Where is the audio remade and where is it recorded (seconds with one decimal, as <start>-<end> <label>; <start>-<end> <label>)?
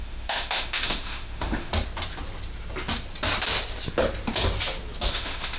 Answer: 0.0-1.7 remade; 1.7-5.1 recorded; 5.1-5.6 remade